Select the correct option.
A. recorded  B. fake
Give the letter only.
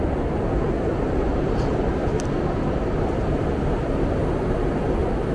A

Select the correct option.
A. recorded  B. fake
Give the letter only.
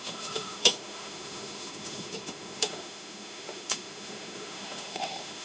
B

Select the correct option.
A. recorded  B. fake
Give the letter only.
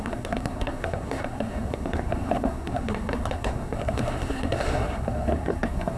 B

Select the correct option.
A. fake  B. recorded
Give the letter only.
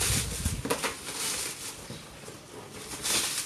B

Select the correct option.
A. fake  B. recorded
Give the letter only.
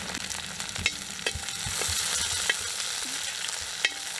B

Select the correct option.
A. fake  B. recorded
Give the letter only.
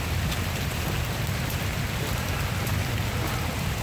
B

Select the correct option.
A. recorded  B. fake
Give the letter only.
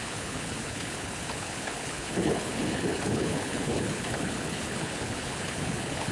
B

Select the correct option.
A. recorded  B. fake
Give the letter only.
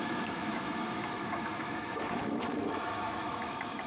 B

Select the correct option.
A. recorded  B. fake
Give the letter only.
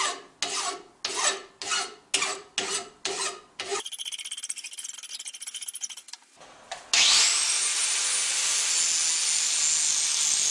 A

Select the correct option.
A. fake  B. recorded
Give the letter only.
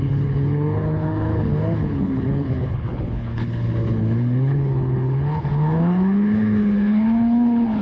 A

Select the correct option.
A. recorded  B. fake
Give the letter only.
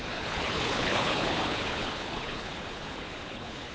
B